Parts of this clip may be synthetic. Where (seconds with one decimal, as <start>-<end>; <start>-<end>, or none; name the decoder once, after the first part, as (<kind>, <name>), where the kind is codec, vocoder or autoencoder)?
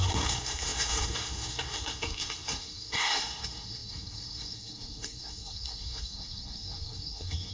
0.0-7.5 (codec, SNAC)